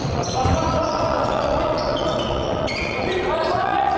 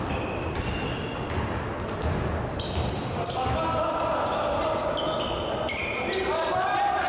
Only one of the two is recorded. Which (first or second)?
second